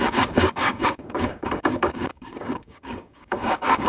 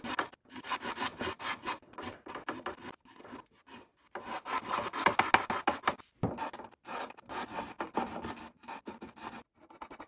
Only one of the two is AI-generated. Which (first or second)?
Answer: first